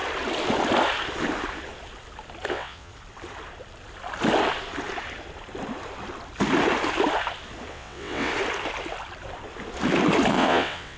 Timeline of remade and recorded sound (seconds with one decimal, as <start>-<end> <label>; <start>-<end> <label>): 0.0-2.5 recorded; 2.5-2.9 remade; 2.9-7.7 recorded; 7.7-8.3 remade; 8.3-10.3 recorded; 10.3-11.0 remade